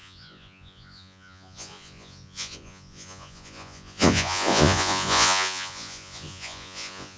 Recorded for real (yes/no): no